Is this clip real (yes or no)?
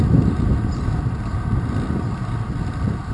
yes